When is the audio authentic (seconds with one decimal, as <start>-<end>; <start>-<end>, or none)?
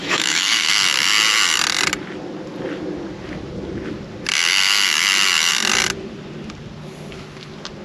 0.7-7.8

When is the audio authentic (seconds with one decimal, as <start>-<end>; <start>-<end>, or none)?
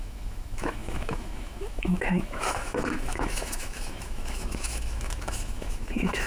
none